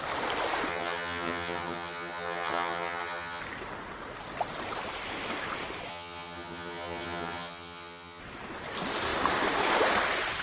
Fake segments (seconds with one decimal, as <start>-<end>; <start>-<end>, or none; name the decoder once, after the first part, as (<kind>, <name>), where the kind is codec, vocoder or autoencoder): 0.7-3.4 (vocoder, HiFi-GAN); 5.9-8.2